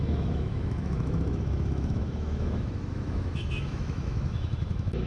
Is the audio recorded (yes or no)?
no